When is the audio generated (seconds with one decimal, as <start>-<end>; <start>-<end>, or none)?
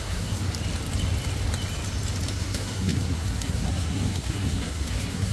0.0-0.4; 2.3-5.3